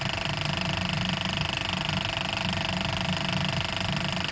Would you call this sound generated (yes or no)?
no